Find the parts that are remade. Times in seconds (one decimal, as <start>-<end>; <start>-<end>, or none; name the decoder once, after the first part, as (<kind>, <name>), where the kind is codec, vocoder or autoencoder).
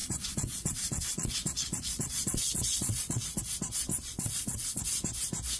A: 0.0-3.4 (vocoder, Vocos); 3.9-4.8